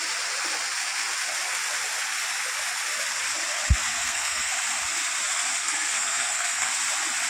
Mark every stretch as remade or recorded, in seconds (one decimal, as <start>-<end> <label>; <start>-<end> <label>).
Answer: 0.0-4.0 recorded; 4.0-4.5 remade; 4.5-5.6 recorded; 5.6-6.7 remade; 6.7-7.3 recorded